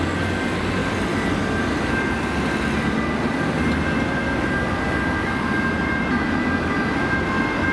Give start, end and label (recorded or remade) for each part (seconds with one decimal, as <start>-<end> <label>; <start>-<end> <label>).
0.0-7.7 recorded